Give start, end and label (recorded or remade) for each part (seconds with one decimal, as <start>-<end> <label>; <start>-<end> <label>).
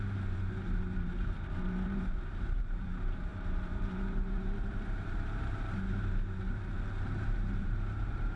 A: 0.0-8.4 remade